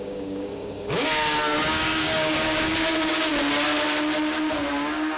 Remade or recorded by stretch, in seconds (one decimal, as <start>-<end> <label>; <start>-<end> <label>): 0.0-3.3 remade; 3.3-4.5 recorded; 4.5-5.2 remade